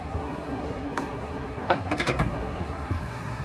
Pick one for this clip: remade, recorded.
remade